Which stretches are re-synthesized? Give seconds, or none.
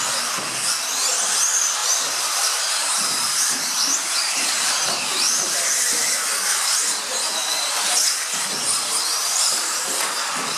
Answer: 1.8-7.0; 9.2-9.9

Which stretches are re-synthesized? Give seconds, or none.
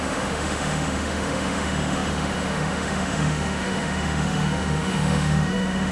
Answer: 0.0-5.9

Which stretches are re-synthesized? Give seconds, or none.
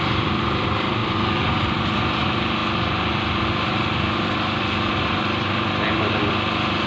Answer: none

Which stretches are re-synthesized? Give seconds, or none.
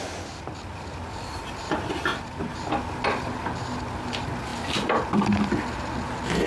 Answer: 2.1-2.6